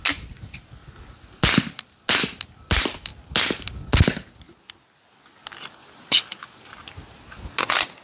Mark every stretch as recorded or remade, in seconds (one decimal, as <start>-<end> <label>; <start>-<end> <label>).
0.0-8.0 recorded